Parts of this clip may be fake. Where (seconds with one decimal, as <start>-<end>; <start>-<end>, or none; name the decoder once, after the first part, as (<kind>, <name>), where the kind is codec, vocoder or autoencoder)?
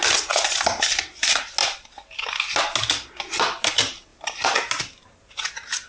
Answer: none